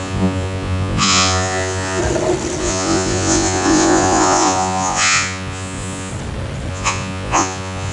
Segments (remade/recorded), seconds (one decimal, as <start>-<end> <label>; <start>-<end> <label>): 0.0-2.0 remade; 2.0-2.6 recorded; 2.6-6.1 remade; 6.1-6.7 recorded; 6.7-7.9 remade